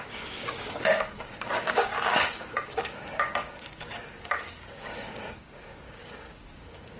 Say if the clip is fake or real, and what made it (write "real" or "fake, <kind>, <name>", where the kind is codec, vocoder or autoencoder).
fake, codec, DAC